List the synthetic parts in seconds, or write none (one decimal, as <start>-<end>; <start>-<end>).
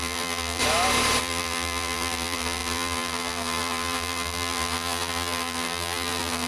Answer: 0.0-0.6; 1.2-6.5